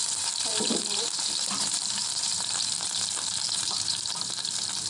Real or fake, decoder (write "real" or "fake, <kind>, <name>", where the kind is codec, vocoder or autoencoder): fake, vocoder, BigVGAN v2